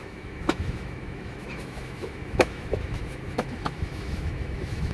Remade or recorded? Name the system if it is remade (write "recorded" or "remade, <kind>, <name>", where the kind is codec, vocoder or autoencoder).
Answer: remade, autoencoder, DAC-VAE